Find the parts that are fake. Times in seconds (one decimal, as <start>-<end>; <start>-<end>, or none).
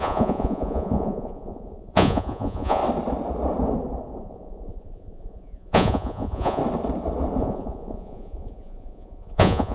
0.0-2.8; 4.2-6.6; 7.4-9.7